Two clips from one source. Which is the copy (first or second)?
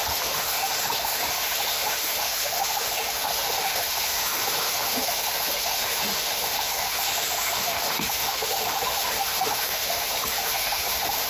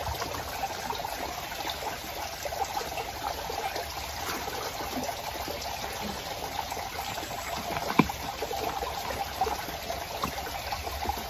first